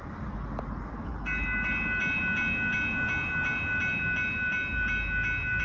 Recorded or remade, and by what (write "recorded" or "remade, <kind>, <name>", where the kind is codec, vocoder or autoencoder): recorded